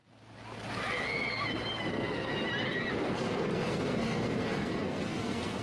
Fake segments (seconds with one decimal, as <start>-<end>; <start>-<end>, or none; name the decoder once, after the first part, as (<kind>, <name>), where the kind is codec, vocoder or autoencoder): 1.9-2.3 (codec, SNAC); 2.9-5.6